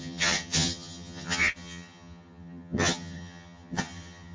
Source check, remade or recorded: remade